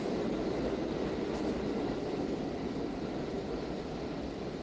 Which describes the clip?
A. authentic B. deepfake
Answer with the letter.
A